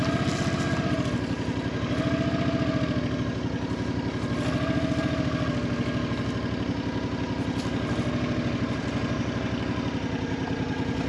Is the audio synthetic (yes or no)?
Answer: no